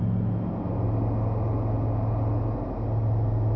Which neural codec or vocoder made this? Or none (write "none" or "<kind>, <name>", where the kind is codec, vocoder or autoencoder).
none